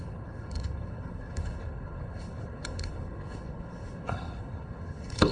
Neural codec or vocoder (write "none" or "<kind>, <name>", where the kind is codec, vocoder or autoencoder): codec, HILCodec